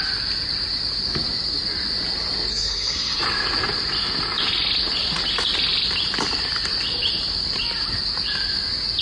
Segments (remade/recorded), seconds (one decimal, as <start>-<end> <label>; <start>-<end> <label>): 0.0-2.5 recorded; 2.5-3.2 remade; 3.2-9.0 recorded